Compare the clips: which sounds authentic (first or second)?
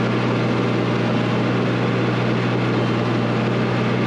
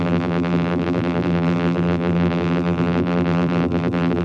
first